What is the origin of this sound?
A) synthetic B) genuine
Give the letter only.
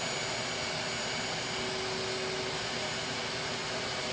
B